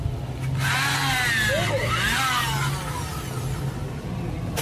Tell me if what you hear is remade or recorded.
recorded